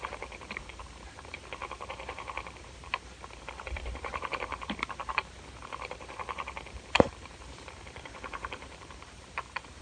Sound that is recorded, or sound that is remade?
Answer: remade